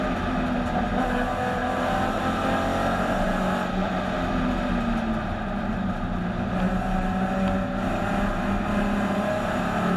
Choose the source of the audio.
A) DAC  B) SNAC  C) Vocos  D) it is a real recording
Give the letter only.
D